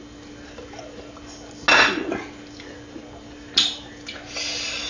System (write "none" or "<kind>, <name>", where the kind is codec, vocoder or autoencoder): none